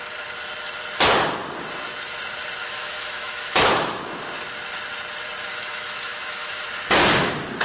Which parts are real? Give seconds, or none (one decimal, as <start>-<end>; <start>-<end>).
0.0-2.6; 4.0-5.5; 6.7-7.6